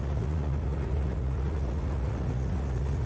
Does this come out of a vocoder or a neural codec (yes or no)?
yes